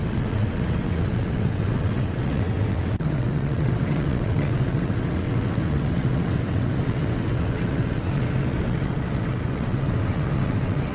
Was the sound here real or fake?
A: fake